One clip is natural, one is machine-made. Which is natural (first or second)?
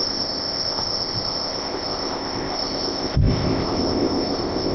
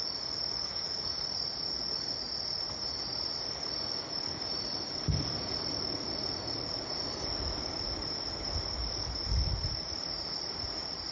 second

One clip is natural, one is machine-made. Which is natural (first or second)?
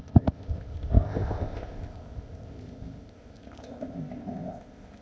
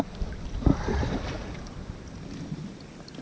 second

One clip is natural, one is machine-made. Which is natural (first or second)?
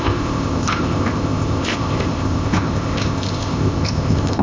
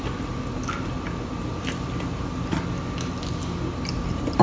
second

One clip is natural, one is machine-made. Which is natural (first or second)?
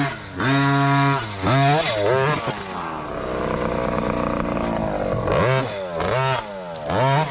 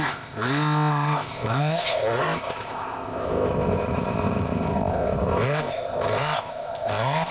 first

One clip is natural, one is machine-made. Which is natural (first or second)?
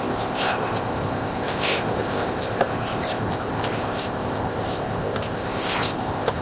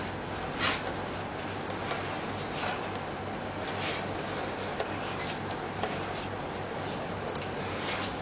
second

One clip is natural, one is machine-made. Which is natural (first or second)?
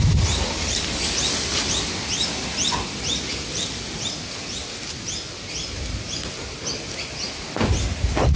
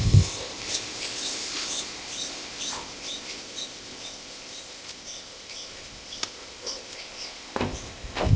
first